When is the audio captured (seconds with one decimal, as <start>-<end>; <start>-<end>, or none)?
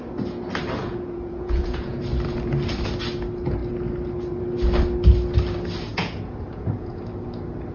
0.0-0.8; 2.0-5.9; 7.0-7.7